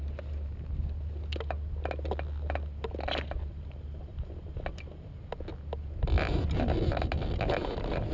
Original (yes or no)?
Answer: yes